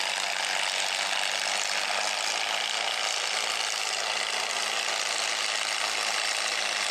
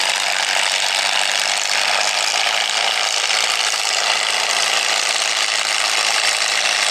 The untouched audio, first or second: first